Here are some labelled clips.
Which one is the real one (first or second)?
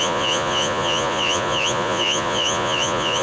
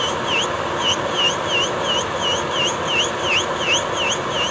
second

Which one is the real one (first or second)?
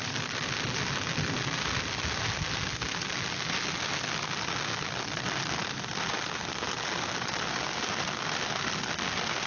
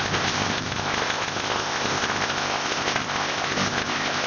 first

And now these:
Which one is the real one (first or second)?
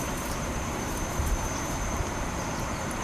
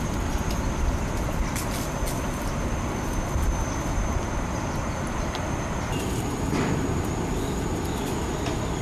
second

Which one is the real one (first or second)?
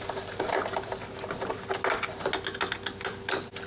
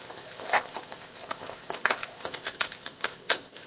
first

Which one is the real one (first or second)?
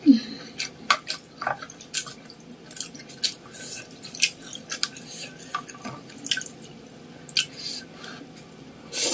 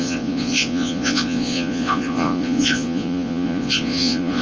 first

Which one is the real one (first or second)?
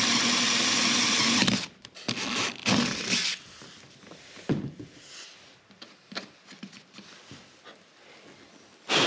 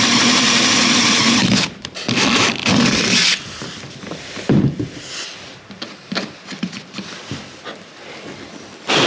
first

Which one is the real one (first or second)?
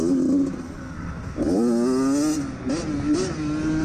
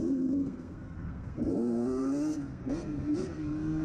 first